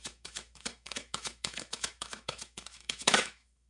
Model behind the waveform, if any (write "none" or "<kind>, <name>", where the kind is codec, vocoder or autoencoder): autoencoder, DAC-VAE